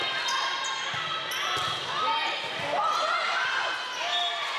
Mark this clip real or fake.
real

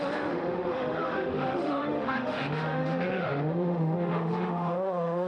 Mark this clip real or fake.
fake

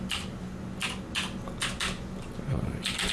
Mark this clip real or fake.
real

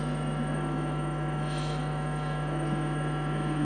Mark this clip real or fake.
fake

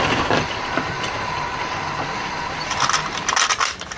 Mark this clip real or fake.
real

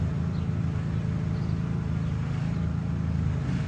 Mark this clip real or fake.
real